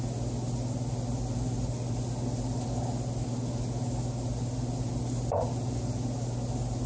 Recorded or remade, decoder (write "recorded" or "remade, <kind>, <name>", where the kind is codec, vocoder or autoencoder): recorded